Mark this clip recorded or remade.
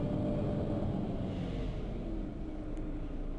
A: recorded